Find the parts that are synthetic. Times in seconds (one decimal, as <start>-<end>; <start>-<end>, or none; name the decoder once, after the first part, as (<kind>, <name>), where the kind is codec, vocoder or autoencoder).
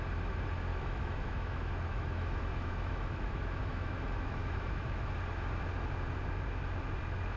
0.7-5.1 (autoencoder, DAC-VAE)